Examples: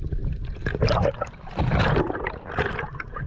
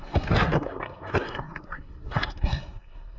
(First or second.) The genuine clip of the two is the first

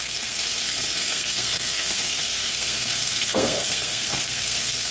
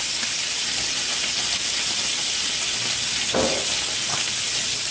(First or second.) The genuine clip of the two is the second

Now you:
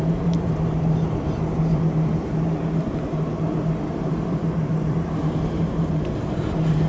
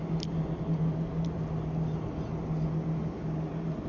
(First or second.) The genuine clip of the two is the second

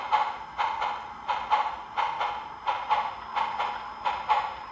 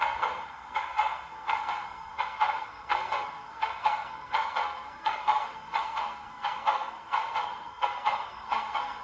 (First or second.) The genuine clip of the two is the first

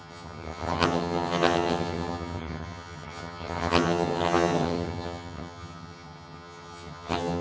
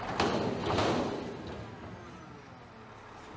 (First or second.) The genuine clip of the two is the second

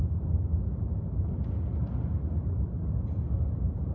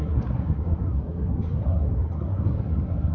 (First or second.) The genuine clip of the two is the first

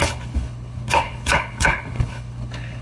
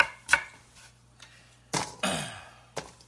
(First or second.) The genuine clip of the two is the second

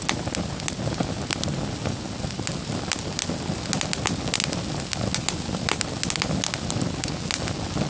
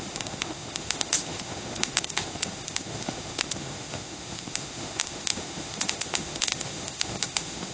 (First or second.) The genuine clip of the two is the first